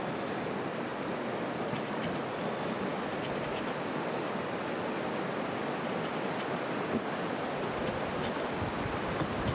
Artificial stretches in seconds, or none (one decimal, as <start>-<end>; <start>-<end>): none